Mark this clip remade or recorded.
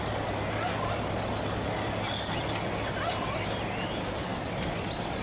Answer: recorded